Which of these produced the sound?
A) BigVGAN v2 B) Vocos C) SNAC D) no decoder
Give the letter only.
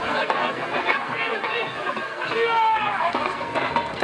C